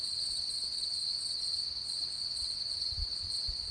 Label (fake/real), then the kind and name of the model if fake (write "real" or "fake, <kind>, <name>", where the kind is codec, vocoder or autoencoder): fake, vocoder, WaveNeXt